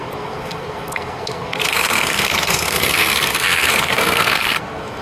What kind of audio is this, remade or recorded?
remade